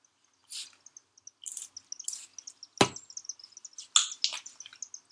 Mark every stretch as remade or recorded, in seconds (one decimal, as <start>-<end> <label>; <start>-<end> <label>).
0.0-5.1 recorded